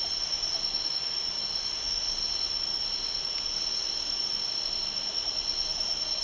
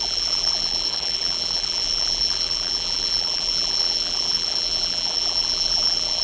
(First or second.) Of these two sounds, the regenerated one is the second